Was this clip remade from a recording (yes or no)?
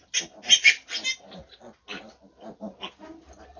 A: no